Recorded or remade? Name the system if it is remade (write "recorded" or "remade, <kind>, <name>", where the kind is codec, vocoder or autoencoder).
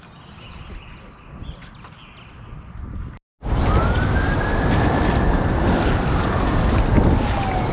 recorded